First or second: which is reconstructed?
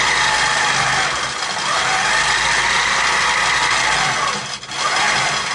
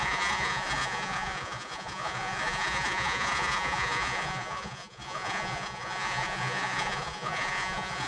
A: second